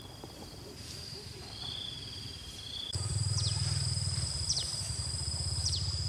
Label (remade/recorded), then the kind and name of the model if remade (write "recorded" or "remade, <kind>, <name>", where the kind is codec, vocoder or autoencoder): remade, vocoder, BigVGAN v2